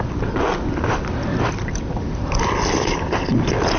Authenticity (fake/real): real